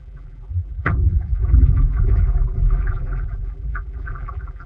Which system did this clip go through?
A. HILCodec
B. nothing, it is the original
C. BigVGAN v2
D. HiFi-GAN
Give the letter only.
C